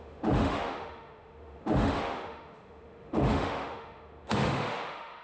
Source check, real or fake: fake